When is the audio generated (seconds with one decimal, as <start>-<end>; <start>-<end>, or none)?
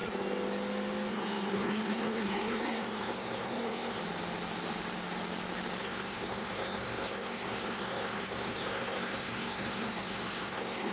1.1-4.0; 5.8-10.9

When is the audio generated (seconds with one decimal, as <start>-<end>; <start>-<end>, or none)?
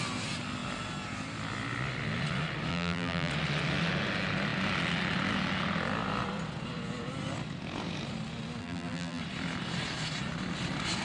2.7-3.3; 8.6-9.2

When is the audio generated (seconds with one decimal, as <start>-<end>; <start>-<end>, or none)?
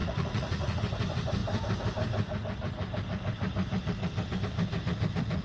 0.0-0.8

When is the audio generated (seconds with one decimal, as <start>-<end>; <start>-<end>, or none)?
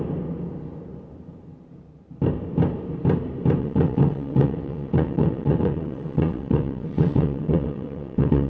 3.6-8.5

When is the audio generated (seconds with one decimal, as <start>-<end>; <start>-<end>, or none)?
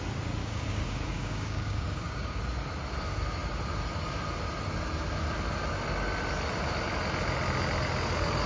0.4-2.4